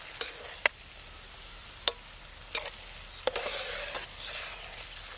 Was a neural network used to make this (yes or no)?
no